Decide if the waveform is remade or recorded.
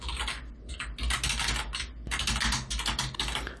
recorded